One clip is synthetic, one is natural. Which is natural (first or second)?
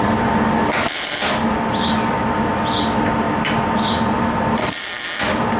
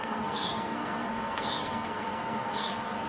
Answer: first